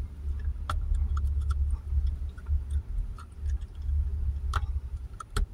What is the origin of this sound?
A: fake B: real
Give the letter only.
B